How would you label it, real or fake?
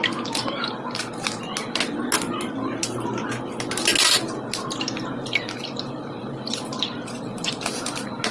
real